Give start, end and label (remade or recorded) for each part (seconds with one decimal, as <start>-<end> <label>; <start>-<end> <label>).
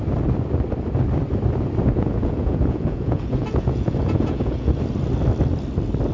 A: 0.0-1.8 recorded; 1.8-4.7 remade; 4.7-6.1 recorded